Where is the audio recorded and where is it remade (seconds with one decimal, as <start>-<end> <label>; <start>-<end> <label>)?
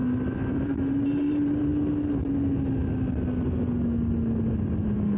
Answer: 0.0-0.5 recorded; 0.5-1.7 remade; 1.7-4.8 recorded; 4.8-5.2 remade